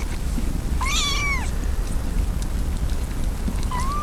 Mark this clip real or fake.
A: real